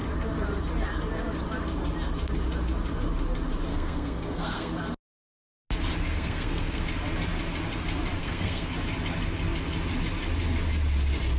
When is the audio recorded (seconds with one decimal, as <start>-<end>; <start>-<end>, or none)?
0.0-3.7; 4.7-6.1; 6.8-8.2; 8.7-11.4